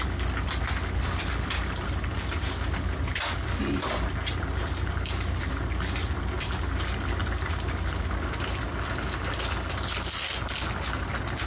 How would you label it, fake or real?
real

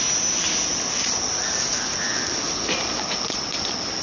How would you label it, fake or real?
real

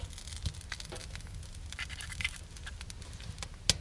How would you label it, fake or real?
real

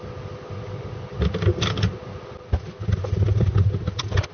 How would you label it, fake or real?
real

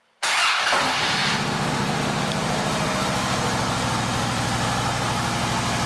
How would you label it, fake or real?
real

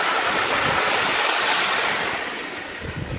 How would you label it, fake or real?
real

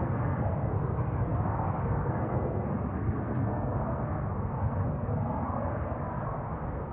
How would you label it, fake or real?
fake